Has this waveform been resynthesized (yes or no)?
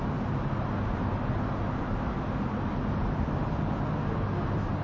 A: no